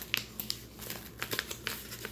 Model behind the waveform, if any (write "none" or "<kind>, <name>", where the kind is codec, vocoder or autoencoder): none